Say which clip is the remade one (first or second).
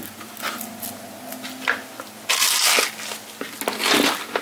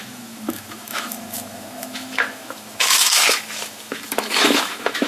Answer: second